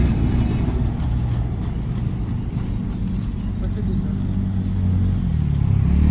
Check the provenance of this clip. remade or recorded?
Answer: recorded